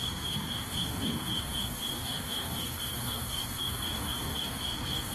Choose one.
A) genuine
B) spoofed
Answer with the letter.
B